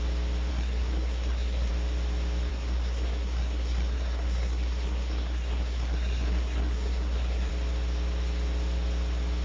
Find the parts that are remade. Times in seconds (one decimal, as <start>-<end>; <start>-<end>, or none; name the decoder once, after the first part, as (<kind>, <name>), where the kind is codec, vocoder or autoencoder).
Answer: 0.5-1.7 (codec, SNAC); 2.5-7.5